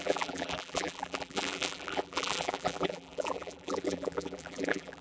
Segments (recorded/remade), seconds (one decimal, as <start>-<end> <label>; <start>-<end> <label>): 0.0-5.0 remade